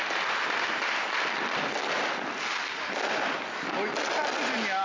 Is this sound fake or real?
real